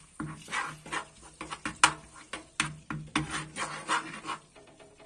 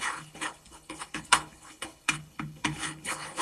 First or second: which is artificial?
second